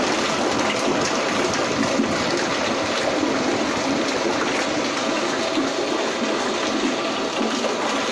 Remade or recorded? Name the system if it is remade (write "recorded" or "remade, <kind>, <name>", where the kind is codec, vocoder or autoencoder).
recorded